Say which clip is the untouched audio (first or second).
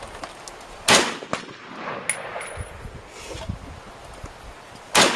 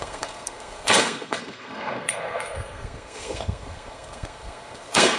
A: first